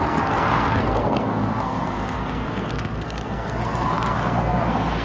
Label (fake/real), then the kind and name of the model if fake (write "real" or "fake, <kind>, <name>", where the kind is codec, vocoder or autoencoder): fake, codec, SNAC